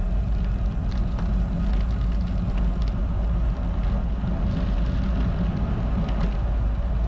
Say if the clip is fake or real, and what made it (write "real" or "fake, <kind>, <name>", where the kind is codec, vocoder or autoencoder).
real